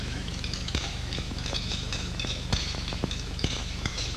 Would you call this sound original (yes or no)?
no